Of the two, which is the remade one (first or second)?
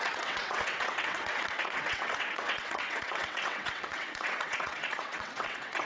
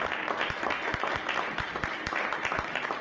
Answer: first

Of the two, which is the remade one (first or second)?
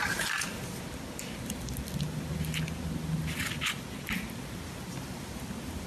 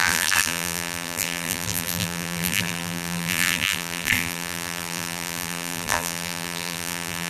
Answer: second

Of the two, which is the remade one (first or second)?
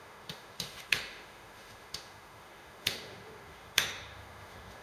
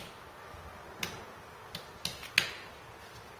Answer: first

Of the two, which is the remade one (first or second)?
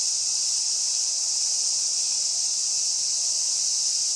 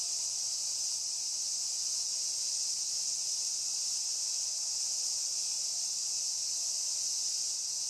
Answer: first